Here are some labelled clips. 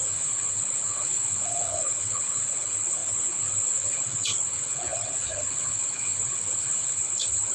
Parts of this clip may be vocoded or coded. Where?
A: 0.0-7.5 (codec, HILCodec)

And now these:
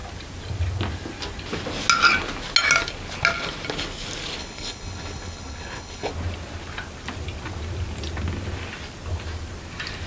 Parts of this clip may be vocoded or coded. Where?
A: 4.4-6.1 (codec, HILCodec)